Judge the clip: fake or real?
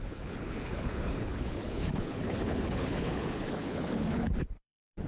fake